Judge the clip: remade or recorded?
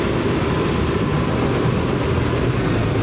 recorded